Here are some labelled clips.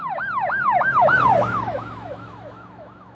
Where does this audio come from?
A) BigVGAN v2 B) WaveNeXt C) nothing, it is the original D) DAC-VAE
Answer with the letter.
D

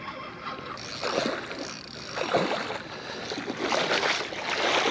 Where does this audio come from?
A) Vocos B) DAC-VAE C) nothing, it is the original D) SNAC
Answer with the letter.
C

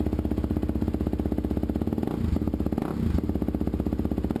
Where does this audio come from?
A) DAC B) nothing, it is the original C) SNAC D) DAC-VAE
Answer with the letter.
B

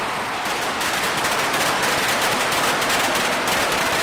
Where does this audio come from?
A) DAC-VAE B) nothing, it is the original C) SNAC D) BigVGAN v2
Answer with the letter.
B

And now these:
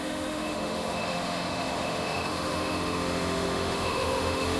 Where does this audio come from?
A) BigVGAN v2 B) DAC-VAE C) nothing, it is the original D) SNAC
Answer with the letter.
B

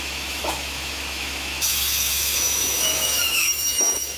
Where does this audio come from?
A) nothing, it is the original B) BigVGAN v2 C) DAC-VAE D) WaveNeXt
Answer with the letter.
C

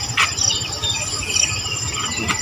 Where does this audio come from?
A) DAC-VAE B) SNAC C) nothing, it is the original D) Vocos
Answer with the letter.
C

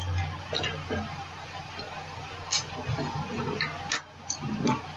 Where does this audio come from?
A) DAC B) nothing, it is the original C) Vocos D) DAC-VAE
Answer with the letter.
B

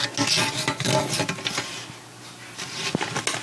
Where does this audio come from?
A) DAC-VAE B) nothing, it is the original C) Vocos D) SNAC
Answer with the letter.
B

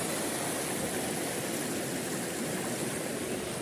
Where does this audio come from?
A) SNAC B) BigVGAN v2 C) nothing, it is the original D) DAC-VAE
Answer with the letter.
C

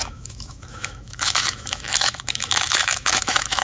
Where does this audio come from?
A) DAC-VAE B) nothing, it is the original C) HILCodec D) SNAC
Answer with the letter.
A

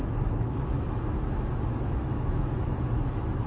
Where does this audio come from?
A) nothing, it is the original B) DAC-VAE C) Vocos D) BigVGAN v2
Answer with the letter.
B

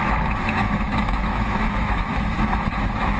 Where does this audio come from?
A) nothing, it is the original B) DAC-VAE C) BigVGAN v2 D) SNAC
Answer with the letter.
B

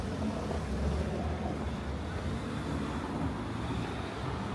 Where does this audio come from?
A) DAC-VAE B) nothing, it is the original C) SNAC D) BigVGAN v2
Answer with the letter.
B